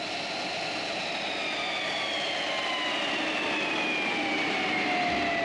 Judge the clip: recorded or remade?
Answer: recorded